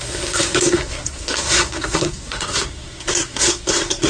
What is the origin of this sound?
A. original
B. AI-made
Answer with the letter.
B